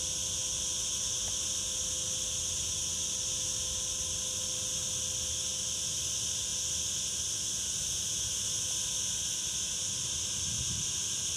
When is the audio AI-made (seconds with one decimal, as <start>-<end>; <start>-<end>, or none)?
none